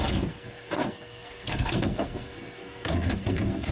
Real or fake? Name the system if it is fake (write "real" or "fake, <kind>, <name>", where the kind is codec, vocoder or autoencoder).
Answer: fake, codec, SNAC